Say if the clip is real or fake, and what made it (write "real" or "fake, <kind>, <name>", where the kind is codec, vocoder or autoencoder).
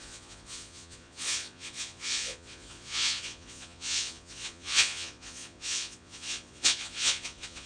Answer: fake, vocoder, Vocos